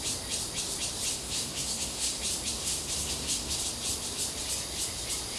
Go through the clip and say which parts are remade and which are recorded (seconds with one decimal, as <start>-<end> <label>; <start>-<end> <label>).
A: 0.0-1.1 recorded; 1.1-2.2 remade; 2.2-2.6 recorded; 2.6-3.6 remade; 3.6-5.4 recorded